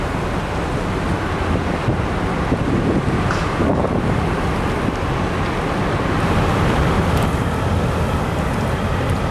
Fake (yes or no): no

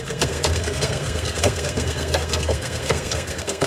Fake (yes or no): yes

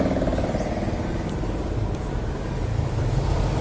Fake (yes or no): no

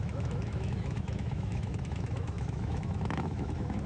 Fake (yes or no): yes